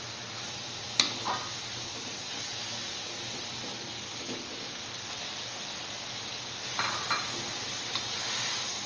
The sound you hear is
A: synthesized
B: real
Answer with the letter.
B